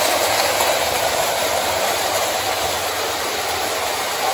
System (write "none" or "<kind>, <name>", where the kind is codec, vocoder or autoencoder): vocoder, BigVGAN v2